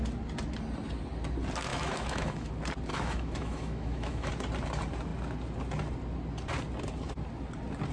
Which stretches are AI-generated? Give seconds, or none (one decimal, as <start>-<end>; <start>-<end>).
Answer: 1.7-2.5; 2.9-4.3